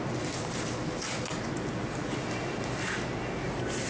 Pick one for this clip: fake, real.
real